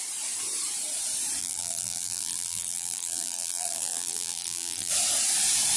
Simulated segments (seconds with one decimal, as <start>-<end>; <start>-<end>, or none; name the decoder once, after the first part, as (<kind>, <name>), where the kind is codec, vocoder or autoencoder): 1.4-4.9 (vocoder, BigVGAN v2)